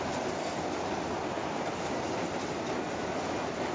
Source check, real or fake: real